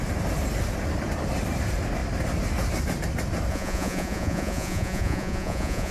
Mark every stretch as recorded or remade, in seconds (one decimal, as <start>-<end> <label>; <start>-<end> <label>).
0.0-3.5 recorded; 3.5-5.9 remade